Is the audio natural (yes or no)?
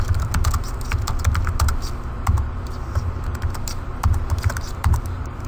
yes